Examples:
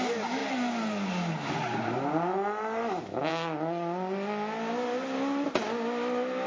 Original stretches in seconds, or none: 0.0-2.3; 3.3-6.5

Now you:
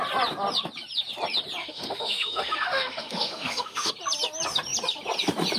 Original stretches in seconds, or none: 0.0-1.6; 3.9-5.6